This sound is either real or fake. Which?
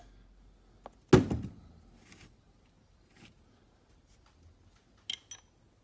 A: real